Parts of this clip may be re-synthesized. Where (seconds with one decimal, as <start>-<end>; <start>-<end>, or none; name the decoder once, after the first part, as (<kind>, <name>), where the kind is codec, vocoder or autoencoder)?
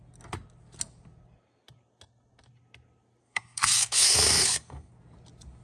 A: 3.2-4.9 (codec, SNAC)